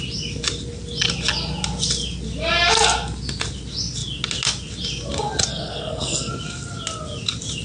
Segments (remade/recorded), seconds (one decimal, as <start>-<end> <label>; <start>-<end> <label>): 0.0-5.5 recorded; 5.5-6.3 remade; 6.3-7.6 recorded

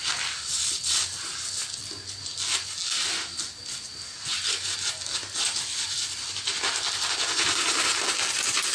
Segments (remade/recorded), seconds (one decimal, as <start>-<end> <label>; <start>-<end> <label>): 0.0-8.7 recorded

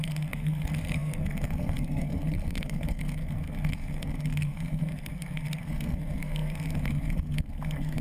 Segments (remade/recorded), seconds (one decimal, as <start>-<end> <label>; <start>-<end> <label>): 0.0-8.0 remade

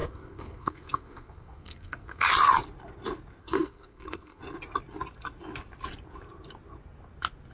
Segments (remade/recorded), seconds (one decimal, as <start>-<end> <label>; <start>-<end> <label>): 0.0-2.3 remade; 2.3-3.4 recorded; 3.4-4.4 remade; 4.4-7.5 recorded

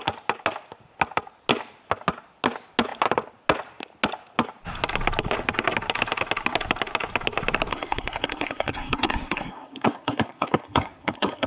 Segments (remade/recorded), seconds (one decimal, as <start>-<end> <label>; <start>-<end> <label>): 0.0-7.7 recorded; 7.7-11.5 remade

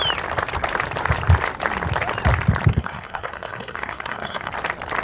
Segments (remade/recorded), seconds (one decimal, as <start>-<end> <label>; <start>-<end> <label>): 0.0-2.7 recorded; 2.7-4.5 remade; 4.5-5.0 recorded